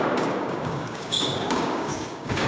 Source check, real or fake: fake